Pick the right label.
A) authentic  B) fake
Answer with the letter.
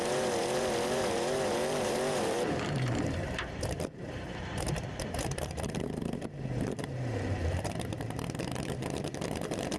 B